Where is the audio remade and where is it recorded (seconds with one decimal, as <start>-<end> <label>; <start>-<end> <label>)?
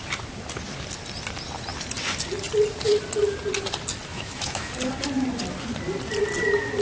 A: 0.0-4.1 recorded; 4.1-4.7 remade; 4.7-6.8 recorded